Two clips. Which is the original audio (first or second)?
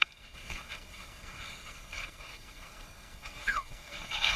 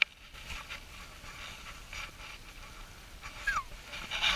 second